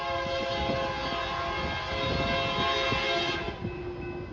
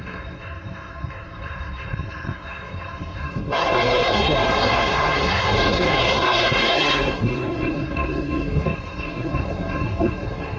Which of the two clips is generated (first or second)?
second